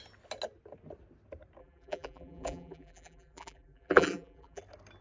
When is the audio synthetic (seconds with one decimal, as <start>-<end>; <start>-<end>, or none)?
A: 1.6-4.6